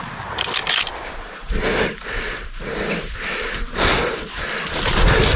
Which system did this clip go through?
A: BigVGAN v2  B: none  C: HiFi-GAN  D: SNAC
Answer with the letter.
B